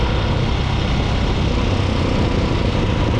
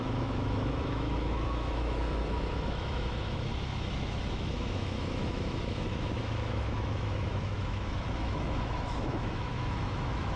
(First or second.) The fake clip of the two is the second